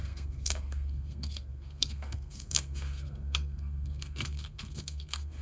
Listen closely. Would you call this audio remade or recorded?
remade